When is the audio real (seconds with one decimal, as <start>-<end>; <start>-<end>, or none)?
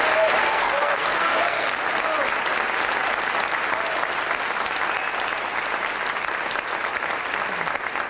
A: 0.0-0.4; 1.8-8.1